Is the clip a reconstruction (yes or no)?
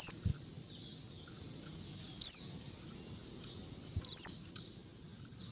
no